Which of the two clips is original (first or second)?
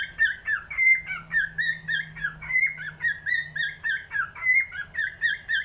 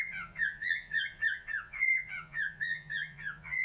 first